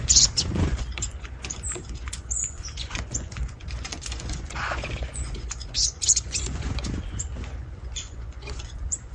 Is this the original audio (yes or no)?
no